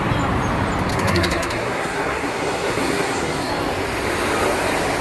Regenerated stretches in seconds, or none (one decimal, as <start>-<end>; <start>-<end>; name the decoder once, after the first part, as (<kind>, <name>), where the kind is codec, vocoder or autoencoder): 0.9-3.5 (codec, SNAC)